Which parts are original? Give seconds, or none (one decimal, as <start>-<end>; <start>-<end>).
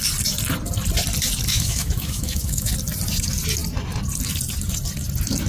0.0-1.5; 2.7-5.5